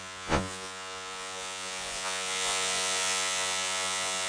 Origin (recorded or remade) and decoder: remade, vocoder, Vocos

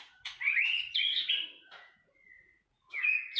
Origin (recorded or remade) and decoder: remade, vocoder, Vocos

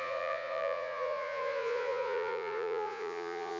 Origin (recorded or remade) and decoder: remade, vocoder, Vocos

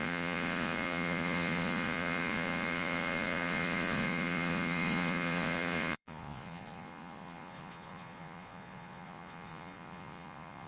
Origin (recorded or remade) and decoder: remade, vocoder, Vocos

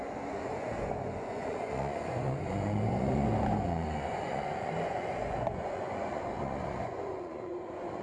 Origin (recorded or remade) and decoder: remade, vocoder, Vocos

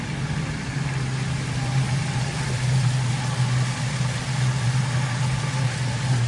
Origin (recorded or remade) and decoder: recorded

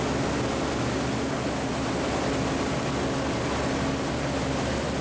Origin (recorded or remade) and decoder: recorded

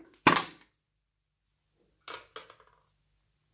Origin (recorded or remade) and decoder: recorded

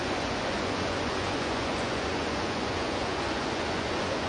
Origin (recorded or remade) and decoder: remade, vocoder, Vocos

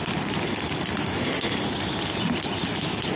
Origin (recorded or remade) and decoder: recorded